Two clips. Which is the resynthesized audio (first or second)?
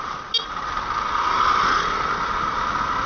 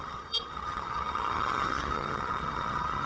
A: second